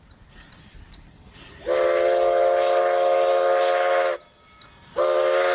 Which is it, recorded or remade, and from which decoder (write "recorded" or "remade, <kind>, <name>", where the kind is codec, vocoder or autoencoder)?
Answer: recorded